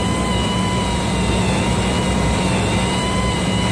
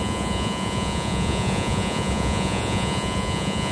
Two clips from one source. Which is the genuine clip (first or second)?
first